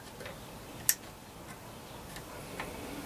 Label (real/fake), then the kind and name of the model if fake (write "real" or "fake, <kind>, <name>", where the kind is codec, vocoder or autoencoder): real